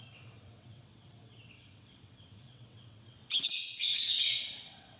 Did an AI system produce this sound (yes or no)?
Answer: yes